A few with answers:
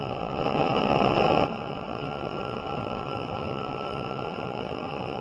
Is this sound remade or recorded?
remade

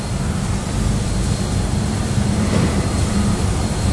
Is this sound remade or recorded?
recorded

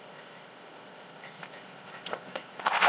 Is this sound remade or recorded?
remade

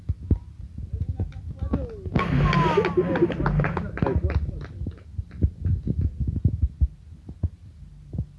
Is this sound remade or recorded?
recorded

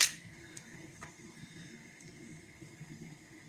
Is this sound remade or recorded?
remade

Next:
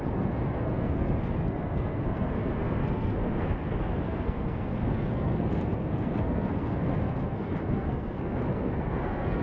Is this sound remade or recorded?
remade